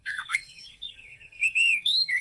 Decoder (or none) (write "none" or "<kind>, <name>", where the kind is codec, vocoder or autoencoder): codec, SNAC